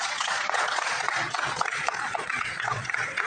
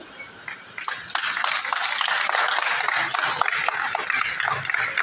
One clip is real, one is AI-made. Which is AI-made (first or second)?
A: first